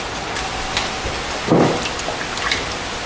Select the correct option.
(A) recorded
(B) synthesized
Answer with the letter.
A